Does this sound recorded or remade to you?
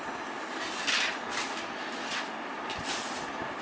recorded